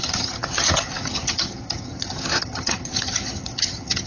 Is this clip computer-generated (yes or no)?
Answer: yes